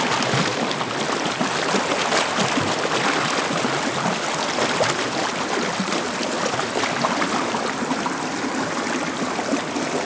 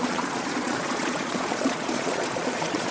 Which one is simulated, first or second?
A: second